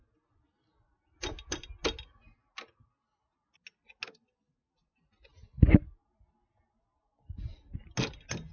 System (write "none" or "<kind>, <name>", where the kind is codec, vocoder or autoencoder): none